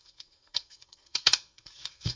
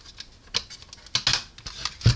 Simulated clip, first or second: first